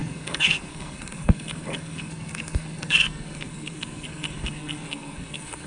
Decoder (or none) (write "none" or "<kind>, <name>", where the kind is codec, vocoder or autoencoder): codec, SNAC